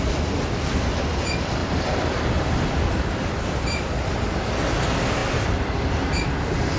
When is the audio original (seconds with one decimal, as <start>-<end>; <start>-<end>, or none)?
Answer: 0.0-1.6; 2.2-6.8

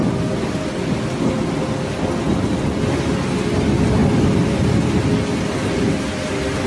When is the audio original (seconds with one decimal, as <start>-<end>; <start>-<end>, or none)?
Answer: 0.0-6.7

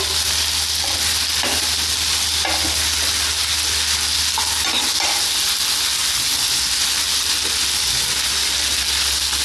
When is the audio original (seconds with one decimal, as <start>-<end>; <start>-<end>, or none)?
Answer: 0.0-9.4

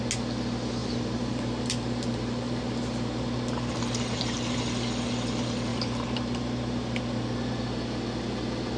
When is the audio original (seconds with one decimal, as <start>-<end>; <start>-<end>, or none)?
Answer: 0.0-0.8; 4.6-5.7; 7.0-8.8

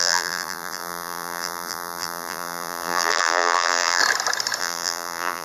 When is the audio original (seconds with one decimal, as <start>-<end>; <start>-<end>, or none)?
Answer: 4.0-4.6

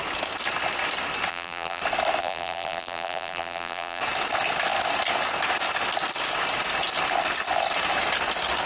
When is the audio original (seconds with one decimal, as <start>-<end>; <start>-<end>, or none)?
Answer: 0.0-1.3; 1.8-2.2; 4.0-8.7